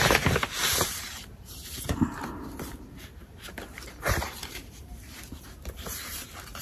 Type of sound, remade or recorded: remade